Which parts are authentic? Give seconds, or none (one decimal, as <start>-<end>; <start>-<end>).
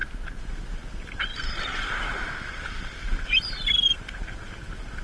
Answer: 0.5-1.3; 3.2-5.0